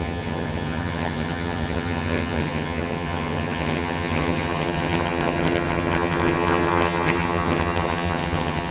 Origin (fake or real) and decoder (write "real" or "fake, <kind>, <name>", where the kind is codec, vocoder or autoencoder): fake, vocoder, HiFi-GAN